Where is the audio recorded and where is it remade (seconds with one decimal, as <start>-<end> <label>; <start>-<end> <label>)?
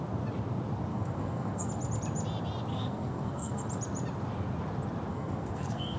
0.0-0.9 recorded; 0.9-1.7 remade; 1.7-2.7 recorded; 2.7-3.6 remade; 3.6-5.1 recorded; 5.1-6.0 remade